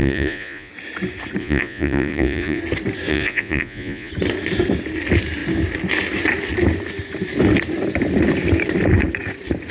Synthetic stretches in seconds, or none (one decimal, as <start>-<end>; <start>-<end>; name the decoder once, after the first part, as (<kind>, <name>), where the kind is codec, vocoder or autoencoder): 0.0-0.7 (vocoder, Vocos); 1.4-2.6; 3.1-4.1